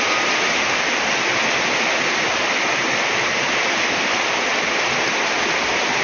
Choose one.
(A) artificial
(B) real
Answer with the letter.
B